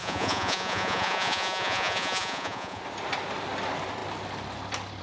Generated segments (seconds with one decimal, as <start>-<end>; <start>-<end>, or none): 0.0-2.8